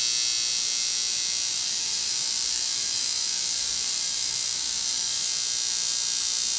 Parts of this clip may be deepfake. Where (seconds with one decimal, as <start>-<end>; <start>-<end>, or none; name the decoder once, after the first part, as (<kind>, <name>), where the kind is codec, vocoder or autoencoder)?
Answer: 1.5-5.3 (autoencoder, DAC-VAE)